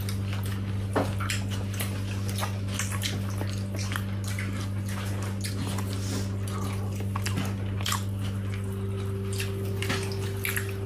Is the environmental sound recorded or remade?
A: recorded